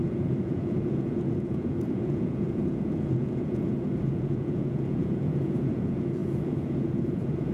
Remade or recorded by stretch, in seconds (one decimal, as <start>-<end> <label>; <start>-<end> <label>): 0.0-7.5 remade